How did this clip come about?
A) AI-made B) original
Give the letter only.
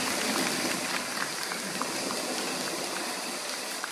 B